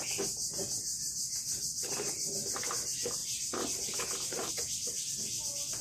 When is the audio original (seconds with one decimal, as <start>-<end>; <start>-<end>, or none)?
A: 0.0-3.2; 4.5-5.8